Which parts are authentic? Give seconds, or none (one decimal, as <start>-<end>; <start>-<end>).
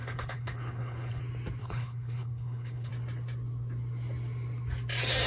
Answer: 1.2-1.6; 2.9-5.3